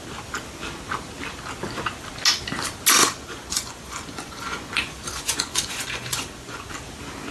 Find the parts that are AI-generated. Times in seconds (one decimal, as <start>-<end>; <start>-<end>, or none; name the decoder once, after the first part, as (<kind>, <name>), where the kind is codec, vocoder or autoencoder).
3.0-6.7 (vocoder, Vocos)